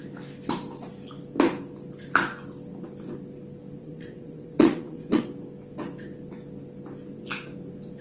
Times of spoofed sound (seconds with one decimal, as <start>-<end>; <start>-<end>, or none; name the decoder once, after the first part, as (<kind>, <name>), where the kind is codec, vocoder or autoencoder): 3.8-5.2 (vocoder, WaveNeXt)